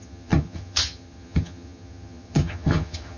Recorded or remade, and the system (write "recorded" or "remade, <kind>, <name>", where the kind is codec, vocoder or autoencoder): remade, vocoder, HiFi-GAN